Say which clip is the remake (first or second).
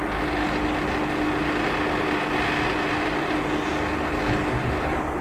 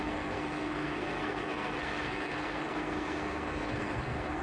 second